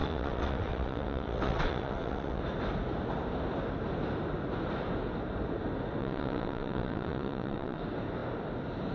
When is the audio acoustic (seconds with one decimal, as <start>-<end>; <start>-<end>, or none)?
2.4-6.0; 7.8-8.9